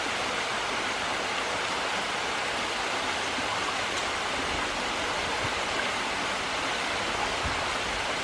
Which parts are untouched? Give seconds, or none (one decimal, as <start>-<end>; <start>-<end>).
0.0-8.2